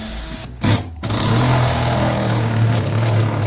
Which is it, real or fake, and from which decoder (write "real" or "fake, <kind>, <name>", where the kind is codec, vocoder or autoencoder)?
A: fake, codec, DAC